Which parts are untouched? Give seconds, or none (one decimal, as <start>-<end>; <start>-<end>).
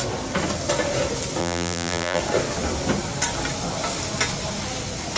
0.0-1.4; 2.2-5.2